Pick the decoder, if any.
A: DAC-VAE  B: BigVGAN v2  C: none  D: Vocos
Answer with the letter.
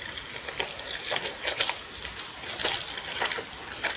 C